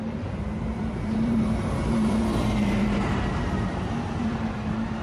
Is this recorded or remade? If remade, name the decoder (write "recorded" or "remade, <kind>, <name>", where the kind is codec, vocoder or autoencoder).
remade, vocoder, BigVGAN v2